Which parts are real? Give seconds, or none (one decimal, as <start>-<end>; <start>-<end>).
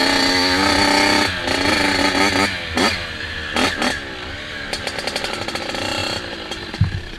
0.0-4.3; 6.0-6.7